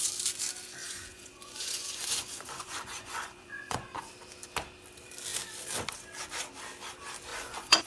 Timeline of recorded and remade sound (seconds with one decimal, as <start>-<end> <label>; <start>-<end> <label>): 0.0-0.8 recorded; 0.8-4.1 remade; 4.1-7.3 recorded; 7.3-7.9 remade